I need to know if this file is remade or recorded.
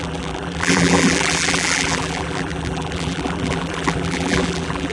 remade